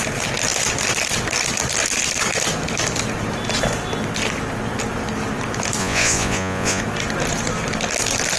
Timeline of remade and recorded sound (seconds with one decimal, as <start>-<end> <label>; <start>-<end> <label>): 0.0-5.8 recorded; 5.8-6.8 remade; 6.8-8.4 recorded